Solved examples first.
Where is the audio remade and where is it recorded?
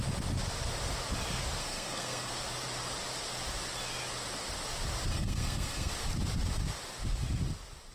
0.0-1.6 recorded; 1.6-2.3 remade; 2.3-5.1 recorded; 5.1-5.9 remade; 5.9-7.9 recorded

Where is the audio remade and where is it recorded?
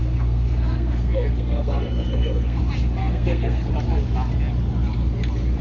0.0-2.6 remade; 2.6-3.0 recorded; 3.0-3.7 remade; 3.7-5.6 recorded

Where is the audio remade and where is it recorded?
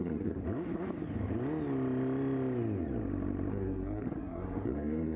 0.0-0.4 remade; 0.4-3.5 recorded; 3.5-5.2 remade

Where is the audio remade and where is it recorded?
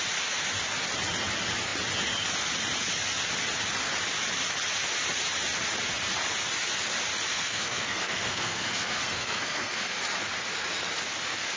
0.0-7.3 recorded; 7.3-10.0 remade; 10.0-11.6 recorded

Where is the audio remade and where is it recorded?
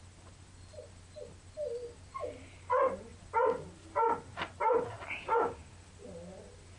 0.0-6.8 recorded